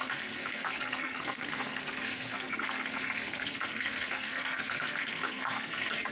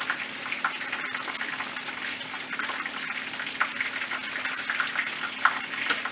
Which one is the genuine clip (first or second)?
second